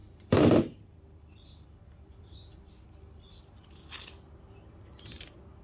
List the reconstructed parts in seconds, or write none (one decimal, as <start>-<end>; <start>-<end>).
0.0-3.4